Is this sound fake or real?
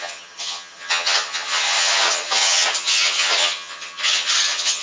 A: fake